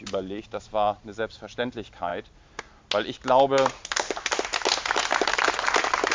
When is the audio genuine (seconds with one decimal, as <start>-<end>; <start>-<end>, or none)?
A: 2.1-5.1